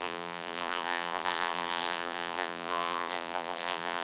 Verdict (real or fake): fake